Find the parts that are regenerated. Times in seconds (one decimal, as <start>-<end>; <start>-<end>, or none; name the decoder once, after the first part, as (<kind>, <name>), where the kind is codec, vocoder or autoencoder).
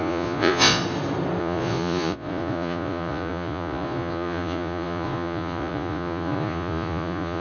0.0-0.8 (vocoder, Vocos); 1.4-7.4